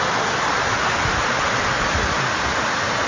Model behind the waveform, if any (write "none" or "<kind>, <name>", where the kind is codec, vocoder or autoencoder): none